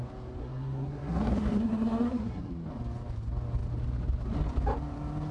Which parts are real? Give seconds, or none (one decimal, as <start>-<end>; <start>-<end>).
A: 0.0-0.4; 2.5-5.3